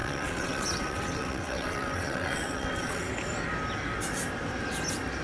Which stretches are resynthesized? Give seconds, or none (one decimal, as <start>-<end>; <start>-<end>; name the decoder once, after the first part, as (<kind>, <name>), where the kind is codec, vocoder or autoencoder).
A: 0.0-3.1 (vocoder, WaveNeXt)